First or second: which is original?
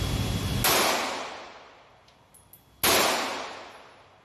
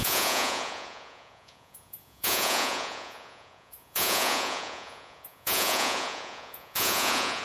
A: first